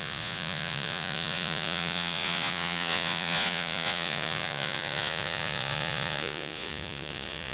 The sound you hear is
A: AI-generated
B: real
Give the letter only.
A